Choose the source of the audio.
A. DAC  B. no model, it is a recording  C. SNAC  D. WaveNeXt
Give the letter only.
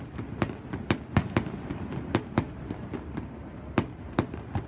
B